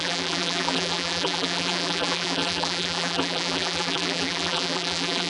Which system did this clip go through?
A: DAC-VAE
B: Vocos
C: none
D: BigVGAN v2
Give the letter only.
D